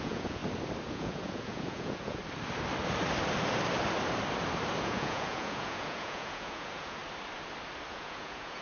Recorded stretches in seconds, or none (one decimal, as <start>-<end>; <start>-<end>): 0.4-0.9; 2.2-4.8; 7.0-7.9